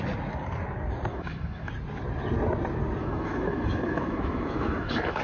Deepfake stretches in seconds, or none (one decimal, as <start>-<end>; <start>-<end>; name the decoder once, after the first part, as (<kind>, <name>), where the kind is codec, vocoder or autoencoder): 1.1-1.7 (autoencoder, DAC-VAE); 3.0-5.2